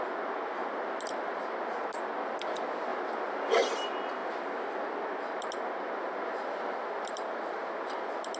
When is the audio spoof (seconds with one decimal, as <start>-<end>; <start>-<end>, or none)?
none